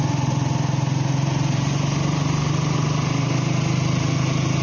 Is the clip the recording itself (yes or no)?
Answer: yes